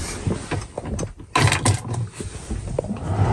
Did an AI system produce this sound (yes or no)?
no